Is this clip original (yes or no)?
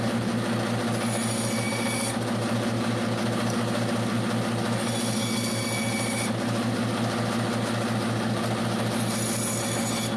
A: yes